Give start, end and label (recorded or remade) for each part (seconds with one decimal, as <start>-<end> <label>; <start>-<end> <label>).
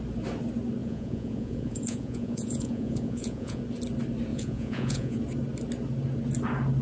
0.0-0.8 recorded; 0.8-3.6 remade; 3.6-4.3 recorded; 4.3-5.2 remade; 5.2-6.8 recorded